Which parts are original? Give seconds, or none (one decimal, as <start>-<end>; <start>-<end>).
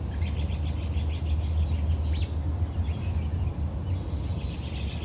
0.0-5.0